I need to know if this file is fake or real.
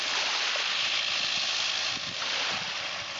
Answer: real